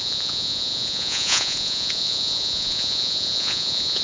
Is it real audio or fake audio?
fake